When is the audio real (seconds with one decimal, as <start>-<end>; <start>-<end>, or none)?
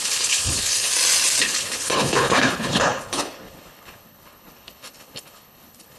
0.9-1.4